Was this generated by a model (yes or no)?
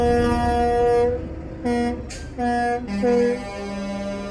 no